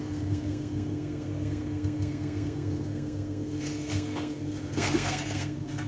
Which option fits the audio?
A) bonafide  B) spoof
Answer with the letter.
B